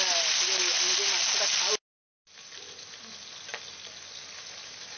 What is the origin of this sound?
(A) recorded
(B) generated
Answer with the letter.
A